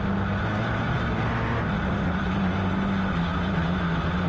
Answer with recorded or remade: recorded